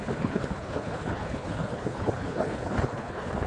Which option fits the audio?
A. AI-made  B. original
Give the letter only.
A